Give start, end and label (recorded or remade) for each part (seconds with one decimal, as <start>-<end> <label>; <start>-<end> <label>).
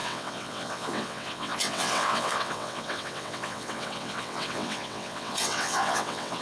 0.0-6.4 remade